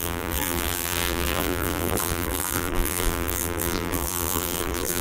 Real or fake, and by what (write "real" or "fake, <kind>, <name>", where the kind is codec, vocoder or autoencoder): fake, vocoder, BigVGAN v2